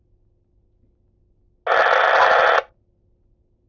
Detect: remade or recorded recorded